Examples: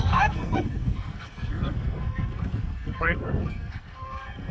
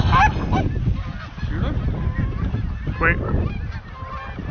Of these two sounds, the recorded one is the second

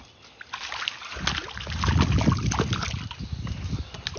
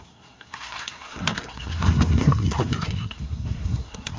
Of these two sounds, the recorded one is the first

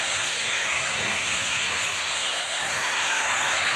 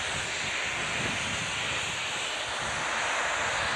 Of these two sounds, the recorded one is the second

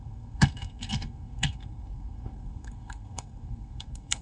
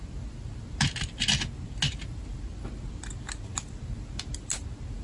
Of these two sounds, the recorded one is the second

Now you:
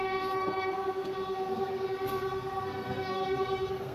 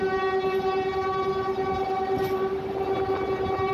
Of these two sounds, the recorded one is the second